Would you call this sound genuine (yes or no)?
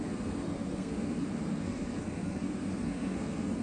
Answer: no